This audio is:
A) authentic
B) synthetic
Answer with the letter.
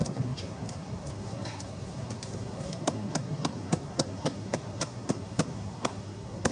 B